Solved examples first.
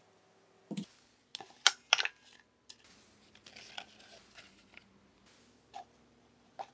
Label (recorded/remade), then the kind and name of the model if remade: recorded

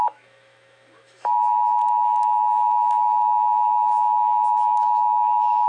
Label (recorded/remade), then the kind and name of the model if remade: remade, autoencoder, DAC-VAE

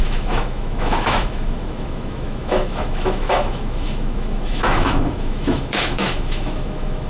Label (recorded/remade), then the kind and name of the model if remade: remade, autoencoder, DAC-VAE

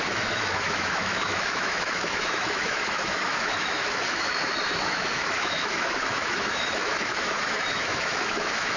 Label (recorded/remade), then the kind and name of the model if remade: remade, autoencoder, DAC-VAE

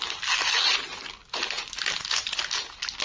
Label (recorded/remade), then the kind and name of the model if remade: recorded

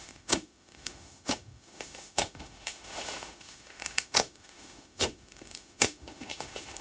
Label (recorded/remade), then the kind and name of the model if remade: remade, autoencoder, DAC-VAE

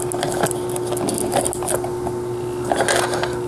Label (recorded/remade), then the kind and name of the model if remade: recorded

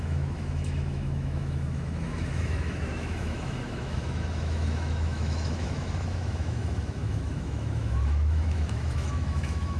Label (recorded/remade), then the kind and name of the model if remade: remade, autoencoder, DAC-VAE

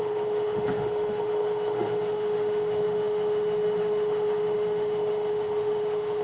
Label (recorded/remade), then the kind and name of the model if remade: remade, autoencoder, DAC-VAE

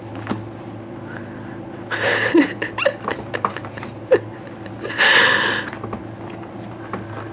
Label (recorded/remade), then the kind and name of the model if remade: recorded